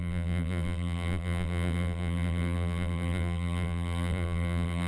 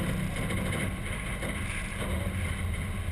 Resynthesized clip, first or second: first